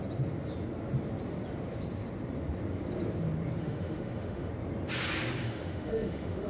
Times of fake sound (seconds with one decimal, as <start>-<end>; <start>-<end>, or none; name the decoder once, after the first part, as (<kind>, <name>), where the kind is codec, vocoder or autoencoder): 3.6-4.5 (autoencoder, DAC-VAE); 5.4-6.5